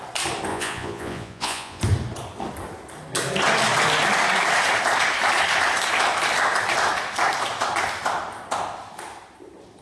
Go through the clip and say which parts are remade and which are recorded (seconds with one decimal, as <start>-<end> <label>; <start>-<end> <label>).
0.0-0.5 recorded; 0.5-1.8 remade; 1.8-9.8 recorded

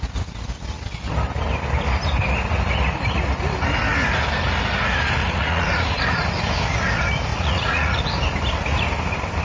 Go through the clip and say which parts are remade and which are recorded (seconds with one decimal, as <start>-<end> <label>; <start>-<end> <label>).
0.0-5.2 recorded; 5.2-6.0 remade; 6.0-7.3 recorded; 7.3-8.0 remade; 8.0-9.4 recorded

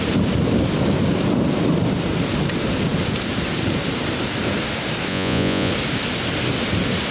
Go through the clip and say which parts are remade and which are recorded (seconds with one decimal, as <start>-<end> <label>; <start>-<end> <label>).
0.0-5.1 recorded; 5.1-5.7 remade; 5.7-7.1 recorded

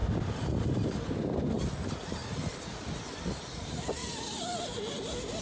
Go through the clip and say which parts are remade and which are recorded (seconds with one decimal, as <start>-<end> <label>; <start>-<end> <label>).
0.0-5.4 recorded